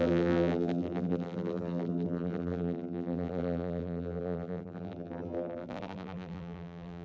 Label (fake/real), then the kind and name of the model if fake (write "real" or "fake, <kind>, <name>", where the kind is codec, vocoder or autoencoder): fake, vocoder, BigVGAN v2